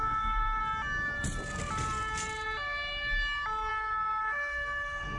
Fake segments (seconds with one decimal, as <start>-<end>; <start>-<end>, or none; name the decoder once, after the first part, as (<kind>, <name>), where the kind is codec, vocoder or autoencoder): 0.0-0.6 (codec, SNAC); 3.7-5.2